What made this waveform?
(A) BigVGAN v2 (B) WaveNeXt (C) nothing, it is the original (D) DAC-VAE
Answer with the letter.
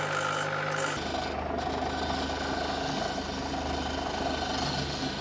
C